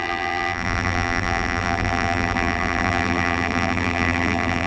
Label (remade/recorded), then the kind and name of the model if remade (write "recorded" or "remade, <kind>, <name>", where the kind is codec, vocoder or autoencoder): remade, vocoder, BigVGAN v2